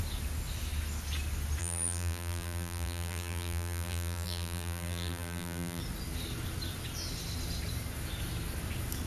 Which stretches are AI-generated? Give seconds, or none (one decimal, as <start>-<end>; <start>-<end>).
1.6-5.8